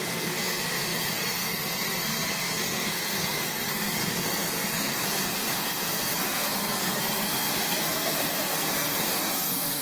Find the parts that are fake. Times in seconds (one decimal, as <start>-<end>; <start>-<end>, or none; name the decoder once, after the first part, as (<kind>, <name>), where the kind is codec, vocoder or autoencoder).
0.0-9.8 (codec, SNAC)